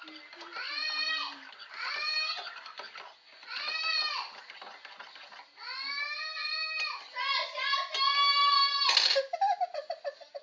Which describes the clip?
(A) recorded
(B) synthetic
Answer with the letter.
A